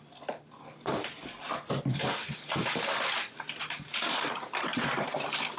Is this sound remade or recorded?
recorded